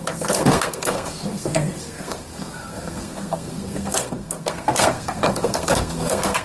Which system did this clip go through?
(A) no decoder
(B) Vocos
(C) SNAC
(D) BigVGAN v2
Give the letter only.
C